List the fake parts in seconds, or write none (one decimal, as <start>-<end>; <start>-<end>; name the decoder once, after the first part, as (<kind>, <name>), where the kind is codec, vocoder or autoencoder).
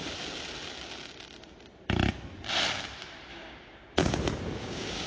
3.3-4.0 (codec, DAC); 4.6-5.1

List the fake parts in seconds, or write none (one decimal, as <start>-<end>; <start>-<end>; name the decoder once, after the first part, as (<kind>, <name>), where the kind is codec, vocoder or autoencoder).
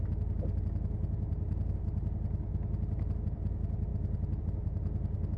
none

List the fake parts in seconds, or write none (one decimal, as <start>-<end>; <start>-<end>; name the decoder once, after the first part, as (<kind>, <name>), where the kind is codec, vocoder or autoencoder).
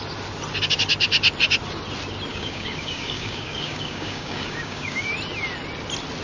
2.3-5.1 (codec, DAC)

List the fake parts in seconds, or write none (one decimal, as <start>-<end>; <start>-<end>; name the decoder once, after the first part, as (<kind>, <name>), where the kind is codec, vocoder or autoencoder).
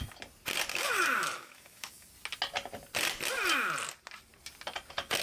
0.7-2.1 (codec, DAC)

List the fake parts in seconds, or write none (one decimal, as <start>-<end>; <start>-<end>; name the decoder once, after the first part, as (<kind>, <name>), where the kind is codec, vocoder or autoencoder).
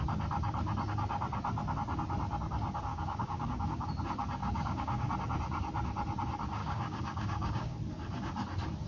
2.9-3.9 (codec, DAC); 4.4-5.1; 6.6-7.8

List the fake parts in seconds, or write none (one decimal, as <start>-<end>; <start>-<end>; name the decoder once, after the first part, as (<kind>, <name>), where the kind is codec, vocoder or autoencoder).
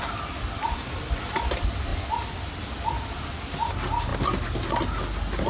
none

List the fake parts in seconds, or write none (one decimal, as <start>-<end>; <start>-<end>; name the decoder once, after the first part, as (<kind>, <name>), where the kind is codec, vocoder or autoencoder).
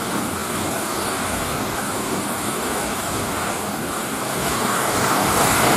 0.0-5.8 (codec, DAC)